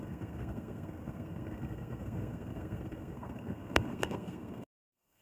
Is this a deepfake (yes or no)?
yes